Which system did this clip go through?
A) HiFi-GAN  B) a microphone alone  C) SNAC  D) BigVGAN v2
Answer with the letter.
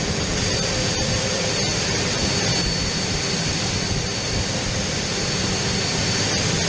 D